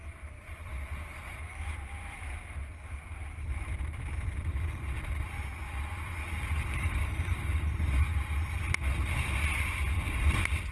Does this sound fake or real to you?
real